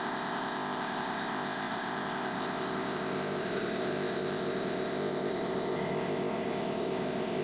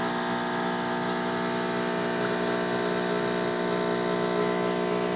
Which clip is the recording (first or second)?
second